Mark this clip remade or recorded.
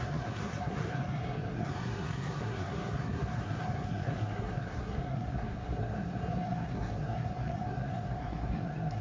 remade